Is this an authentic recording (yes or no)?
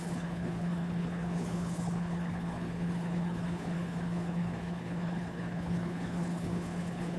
no